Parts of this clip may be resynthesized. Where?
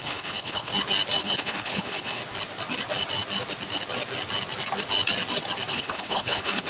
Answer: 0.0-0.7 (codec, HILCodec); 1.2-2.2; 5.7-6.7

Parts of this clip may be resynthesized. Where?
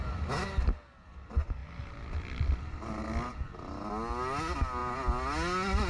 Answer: none